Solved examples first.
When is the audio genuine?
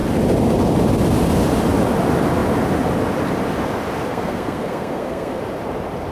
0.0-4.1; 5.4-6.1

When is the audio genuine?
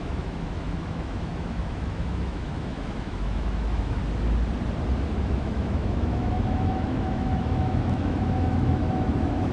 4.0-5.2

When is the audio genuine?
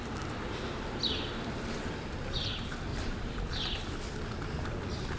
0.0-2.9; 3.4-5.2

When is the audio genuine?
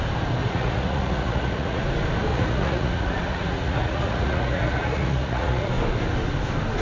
0.0-0.4; 1.8-2.3; 5.7-6.8